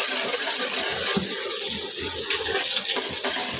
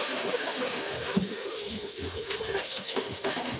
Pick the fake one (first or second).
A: second